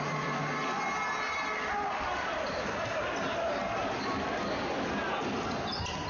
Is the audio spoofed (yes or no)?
no